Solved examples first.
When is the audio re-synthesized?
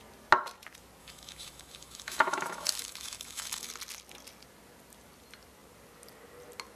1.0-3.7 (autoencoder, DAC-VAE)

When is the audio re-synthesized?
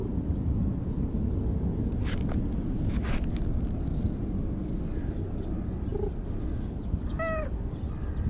none